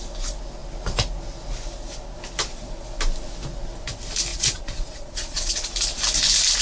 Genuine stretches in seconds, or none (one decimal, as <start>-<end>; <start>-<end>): 0.0-4.3; 5.7-6.6